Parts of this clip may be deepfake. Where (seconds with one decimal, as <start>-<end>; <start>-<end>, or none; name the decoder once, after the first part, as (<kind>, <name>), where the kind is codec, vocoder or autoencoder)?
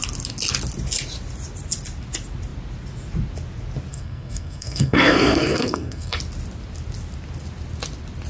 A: 3.9-6.2 (codec, SNAC)